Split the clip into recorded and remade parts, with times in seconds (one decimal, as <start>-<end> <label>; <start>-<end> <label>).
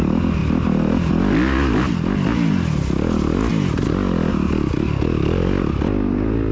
0.0-6.5 recorded